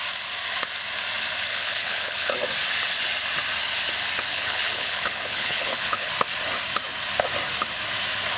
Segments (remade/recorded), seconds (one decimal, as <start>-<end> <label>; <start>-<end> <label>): 0.0-1.5 recorded; 1.5-2.3 remade; 2.3-4.3 recorded; 4.3-6.1 remade; 6.1-8.4 recorded